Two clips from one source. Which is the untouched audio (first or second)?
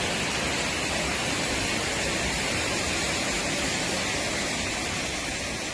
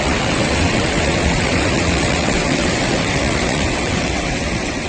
first